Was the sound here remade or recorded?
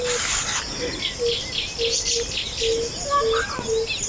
recorded